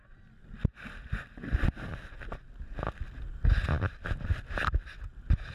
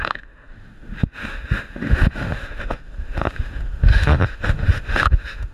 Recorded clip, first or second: first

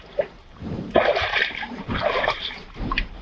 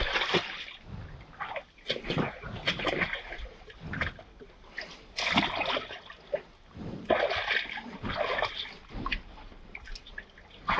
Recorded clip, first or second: second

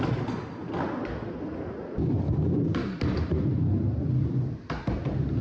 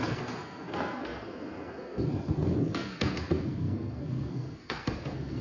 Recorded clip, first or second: first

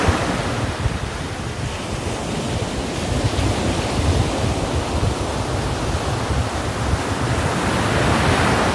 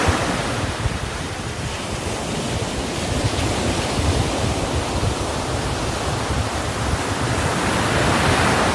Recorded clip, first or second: first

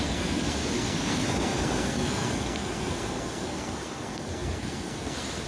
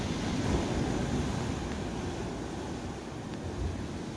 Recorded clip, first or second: second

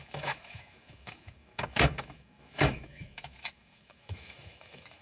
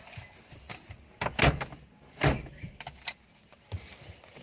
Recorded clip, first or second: second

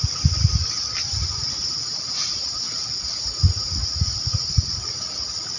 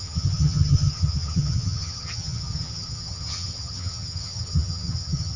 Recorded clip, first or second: first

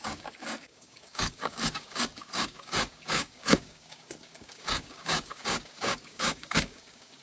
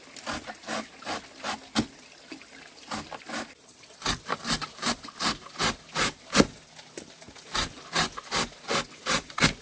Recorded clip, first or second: second